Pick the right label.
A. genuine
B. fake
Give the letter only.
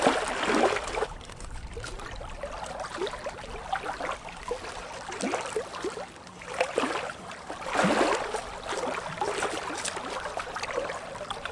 A